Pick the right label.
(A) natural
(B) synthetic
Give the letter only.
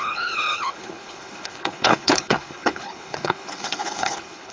B